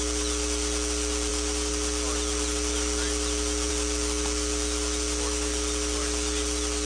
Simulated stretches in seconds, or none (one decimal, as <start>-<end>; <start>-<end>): none